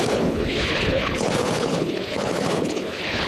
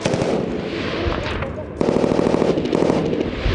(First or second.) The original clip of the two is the second